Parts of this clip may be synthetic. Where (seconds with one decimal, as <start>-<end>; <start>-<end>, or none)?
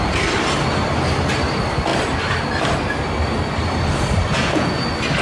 4.3-4.8